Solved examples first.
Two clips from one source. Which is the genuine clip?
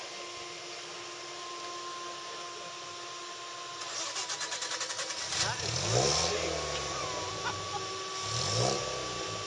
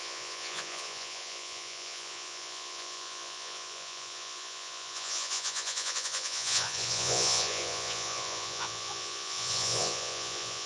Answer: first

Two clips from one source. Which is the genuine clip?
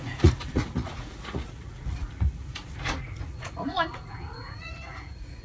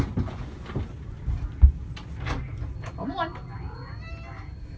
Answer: second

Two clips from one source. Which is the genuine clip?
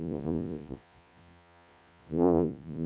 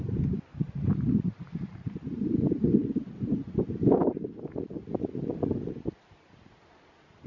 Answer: second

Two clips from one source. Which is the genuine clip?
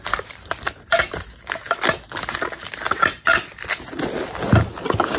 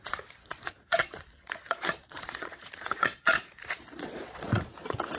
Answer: first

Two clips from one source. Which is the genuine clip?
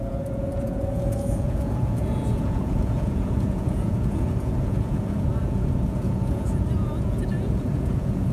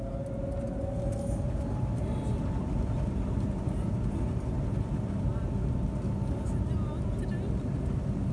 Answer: second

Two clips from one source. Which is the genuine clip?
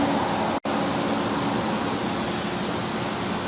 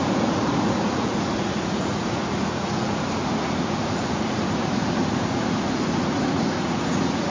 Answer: first